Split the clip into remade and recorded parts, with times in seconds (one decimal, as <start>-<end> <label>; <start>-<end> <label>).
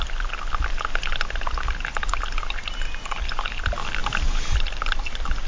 0.0-5.5 recorded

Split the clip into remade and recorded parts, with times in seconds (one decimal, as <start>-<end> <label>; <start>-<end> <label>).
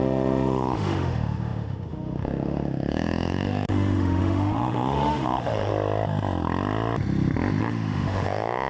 0.0-5.7 remade; 5.7-7.6 recorded; 7.6-8.7 remade